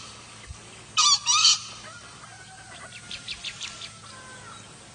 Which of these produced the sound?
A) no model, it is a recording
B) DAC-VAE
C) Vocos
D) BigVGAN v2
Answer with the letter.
A